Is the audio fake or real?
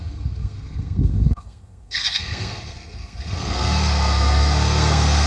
fake